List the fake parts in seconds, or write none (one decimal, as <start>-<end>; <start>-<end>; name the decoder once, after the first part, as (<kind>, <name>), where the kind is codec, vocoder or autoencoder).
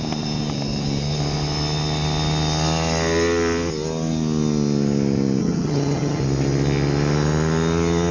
5.4-6.2 (vocoder, HiFi-GAN)